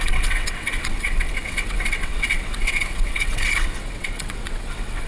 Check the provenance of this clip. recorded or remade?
remade